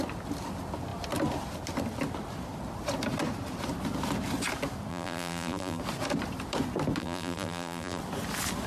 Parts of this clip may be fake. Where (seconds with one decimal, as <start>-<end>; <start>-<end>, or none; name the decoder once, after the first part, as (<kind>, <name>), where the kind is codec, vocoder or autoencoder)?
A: 4.9-5.8 (vocoder, BigVGAN v2); 7.0-8.0